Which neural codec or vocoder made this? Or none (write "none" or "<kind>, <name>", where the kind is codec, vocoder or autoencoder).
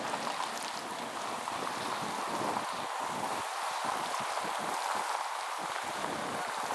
none